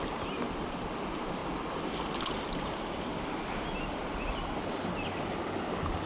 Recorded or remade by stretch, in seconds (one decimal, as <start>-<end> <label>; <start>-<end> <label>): 0.0-6.1 recorded